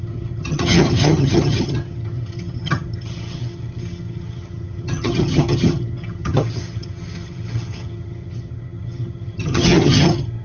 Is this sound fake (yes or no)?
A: yes